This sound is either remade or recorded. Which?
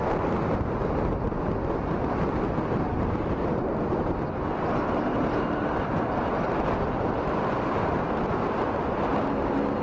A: recorded